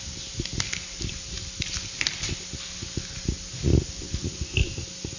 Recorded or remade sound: recorded